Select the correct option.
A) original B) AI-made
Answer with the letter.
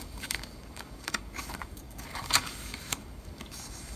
B